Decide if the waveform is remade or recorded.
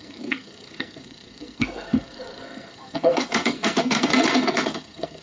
remade